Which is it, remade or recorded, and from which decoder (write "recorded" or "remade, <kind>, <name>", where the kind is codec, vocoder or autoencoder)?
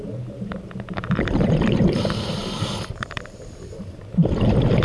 remade, vocoder, BigVGAN v2